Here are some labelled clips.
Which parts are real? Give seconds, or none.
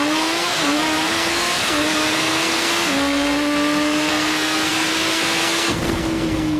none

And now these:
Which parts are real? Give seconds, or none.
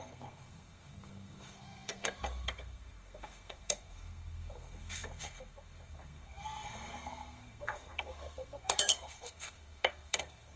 none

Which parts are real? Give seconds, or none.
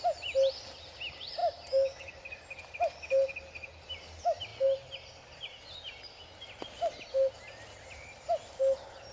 0.0-9.1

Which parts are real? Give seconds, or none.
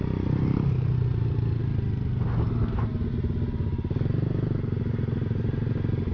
0.0-6.1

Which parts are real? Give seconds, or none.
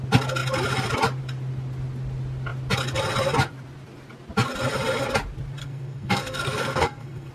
0.0-5.6